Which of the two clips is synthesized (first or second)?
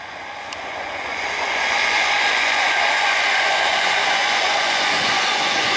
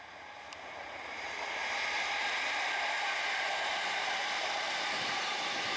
first